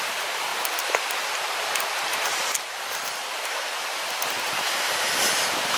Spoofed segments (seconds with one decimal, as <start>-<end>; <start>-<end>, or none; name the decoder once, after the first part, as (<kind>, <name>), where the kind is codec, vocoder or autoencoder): none